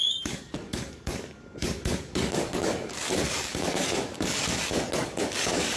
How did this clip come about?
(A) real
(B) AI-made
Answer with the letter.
B